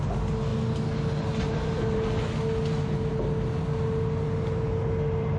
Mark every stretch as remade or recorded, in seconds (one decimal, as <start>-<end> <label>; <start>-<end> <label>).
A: 0.0-5.4 recorded